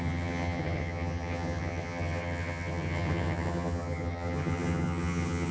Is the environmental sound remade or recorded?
remade